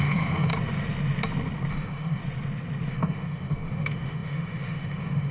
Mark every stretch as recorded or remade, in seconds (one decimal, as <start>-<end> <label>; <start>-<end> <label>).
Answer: 0.0-0.5 remade; 0.5-1.7 recorded; 1.7-2.2 remade; 2.2-2.9 recorded; 2.9-5.3 remade